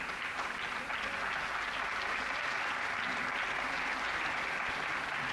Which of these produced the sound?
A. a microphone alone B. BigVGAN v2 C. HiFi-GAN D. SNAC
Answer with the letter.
A